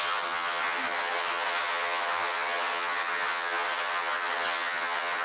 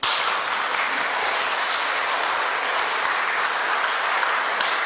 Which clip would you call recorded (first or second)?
second